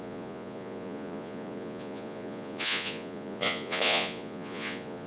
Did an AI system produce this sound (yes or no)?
yes